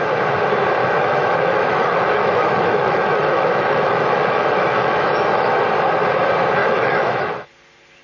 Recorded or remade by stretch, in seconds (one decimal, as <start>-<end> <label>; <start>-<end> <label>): 0.0-0.8 recorded; 0.8-5.6 remade; 5.6-6.6 recorded; 6.6-7.5 remade; 7.5-8.0 recorded